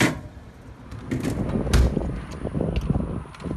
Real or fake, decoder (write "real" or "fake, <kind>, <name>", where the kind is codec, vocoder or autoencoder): real